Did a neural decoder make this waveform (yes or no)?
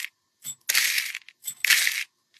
no